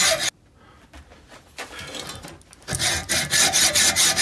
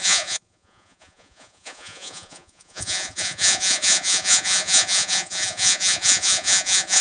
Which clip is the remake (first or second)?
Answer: second